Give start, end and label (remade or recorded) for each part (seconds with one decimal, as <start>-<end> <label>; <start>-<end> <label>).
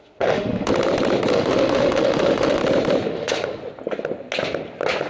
0.0-0.7 remade; 0.7-1.3 recorded; 1.3-2.6 remade; 2.6-3.1 recorded; 3.1-3.6 remade; 3.6-5.1 recorded